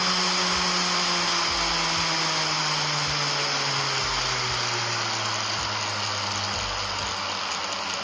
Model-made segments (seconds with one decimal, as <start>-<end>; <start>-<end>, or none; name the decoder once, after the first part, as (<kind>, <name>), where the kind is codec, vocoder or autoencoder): none